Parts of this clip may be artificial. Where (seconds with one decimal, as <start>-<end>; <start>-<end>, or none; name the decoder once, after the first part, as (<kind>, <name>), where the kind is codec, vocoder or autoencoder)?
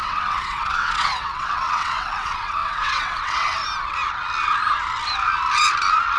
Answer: 0.0-3.6 (vocoder, WaveNeXt)